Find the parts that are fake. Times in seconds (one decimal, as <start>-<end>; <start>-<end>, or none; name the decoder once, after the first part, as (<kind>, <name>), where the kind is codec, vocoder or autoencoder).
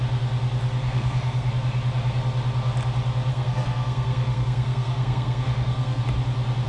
0.8-1.5 (codec, SNAC); 3.3-6.0